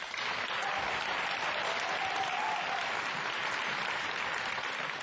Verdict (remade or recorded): recorded